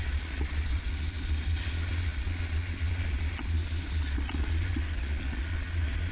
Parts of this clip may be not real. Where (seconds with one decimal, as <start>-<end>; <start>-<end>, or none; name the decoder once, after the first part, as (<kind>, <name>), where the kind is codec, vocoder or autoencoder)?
0.0-6.1 (vocoder, Vocos)